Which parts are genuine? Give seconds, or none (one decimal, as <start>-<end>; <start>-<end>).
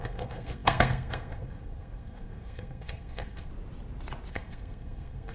3.5-4.3